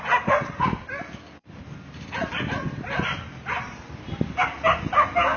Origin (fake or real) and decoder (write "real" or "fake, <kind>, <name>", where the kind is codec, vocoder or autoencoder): real